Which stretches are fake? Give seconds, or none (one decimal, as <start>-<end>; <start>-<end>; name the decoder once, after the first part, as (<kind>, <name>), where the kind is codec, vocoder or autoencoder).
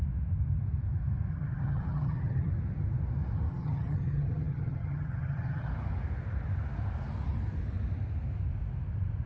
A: 1.3-2.5 (vocoder, HiFi-GAN); 3.5-5.7